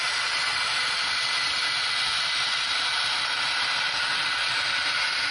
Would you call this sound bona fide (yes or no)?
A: yes